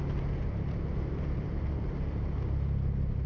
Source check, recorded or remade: recorded